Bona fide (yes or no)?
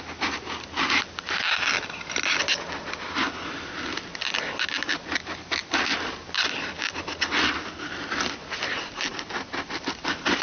yes